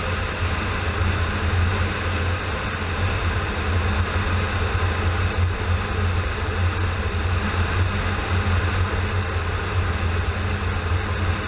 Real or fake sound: real